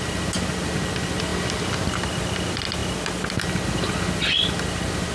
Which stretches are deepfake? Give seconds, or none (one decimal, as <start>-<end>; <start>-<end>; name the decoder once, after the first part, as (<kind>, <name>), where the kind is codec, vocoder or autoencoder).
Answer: none